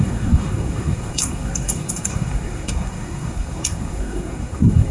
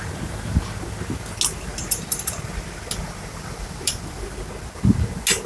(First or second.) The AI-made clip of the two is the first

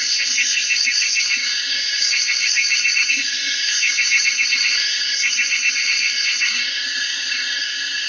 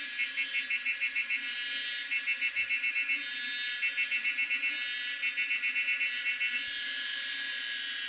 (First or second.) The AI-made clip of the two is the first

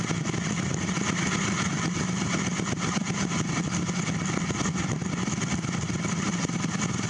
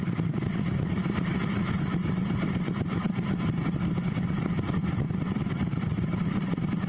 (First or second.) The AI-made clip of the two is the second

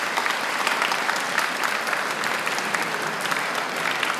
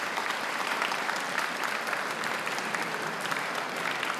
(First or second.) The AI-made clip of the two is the second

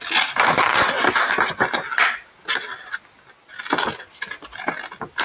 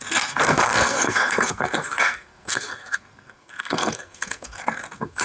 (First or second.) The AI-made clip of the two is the second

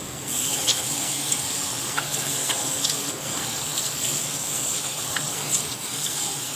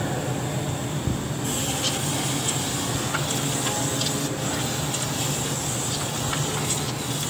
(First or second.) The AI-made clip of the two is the first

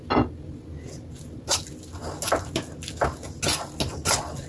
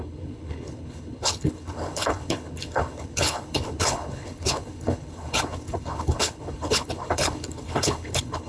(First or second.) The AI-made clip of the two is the second